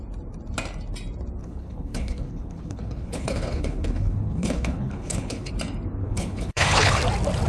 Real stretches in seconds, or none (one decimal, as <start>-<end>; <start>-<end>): 0.0-1.4; 5.5-6.0; 7.0-7.5